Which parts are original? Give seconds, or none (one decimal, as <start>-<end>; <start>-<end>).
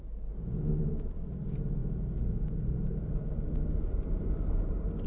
0.0-5.1